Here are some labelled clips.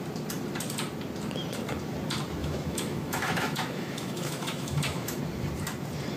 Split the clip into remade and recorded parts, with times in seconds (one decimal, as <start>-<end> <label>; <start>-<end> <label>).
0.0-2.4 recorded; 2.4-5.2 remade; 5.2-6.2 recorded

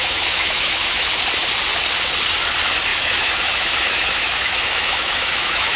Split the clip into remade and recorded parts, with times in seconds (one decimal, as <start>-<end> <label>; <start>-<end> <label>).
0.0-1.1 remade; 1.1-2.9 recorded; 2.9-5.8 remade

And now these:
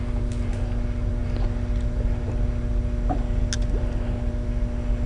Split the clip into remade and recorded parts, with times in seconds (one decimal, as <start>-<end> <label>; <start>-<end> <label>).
0.0-5.1 recorded

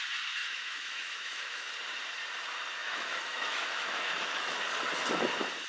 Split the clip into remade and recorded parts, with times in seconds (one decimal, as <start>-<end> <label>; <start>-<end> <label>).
0.0-0.4 recorded; 0.4-1.7 remade; 1.7-2.8 recorded; 2.8-4.6 remade; 4.6-5.7 recorded

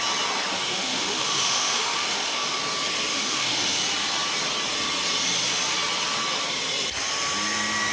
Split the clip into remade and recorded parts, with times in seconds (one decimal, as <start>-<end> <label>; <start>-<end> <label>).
0.0-0.5 recorded; 0.5-2.6 remade; 2.6-3.1 recorded; 3.1-3.8 remade; 3.8-7.9 recorded